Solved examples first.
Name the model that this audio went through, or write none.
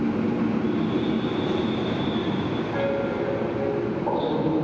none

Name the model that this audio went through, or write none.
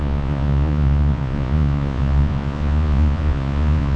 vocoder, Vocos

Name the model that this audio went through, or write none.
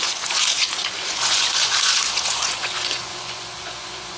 vocoder, Vocos